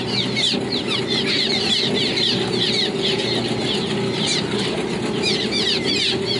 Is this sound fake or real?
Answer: real